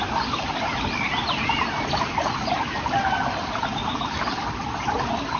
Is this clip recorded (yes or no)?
yes